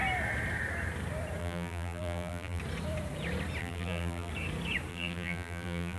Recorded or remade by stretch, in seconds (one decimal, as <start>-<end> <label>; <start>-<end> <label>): 0.0-1.4 recorded; 1.4-2.6 remade; 2.6-3.6 recorded; 3.6-4.3 remade; 4.3-4.9 recorded; 4.9-6.0 remade